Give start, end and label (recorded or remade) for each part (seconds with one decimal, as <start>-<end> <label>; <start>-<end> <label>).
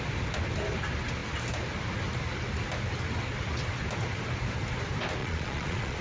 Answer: 0.0-5.2 recorded; 5.2-6.0 remade